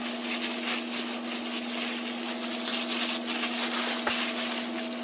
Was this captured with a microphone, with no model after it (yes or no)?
yes